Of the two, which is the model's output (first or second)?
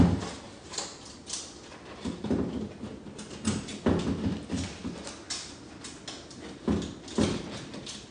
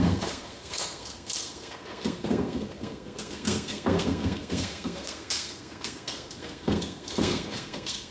second